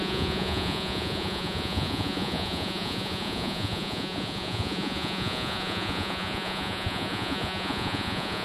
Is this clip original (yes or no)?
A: no